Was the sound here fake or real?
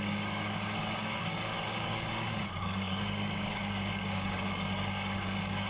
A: fake